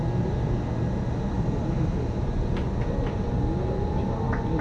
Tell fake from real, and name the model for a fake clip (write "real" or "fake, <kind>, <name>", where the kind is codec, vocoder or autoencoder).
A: real